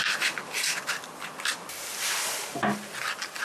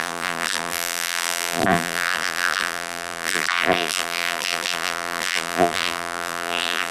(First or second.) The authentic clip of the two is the first